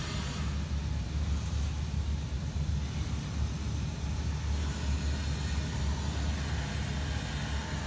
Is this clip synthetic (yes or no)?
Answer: no